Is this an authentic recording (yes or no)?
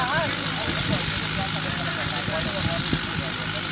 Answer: yes